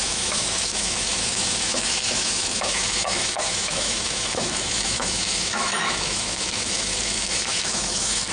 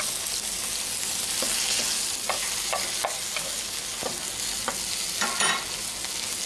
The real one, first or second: second